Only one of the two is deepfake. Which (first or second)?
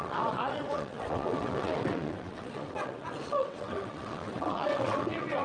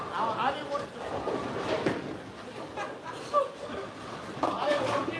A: first